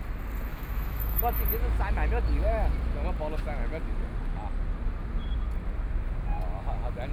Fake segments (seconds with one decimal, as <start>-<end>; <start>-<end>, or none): 0.5-1.4